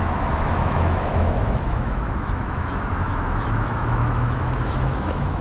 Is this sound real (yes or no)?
no